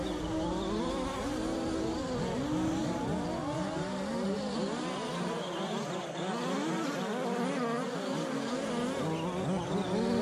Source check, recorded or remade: recorded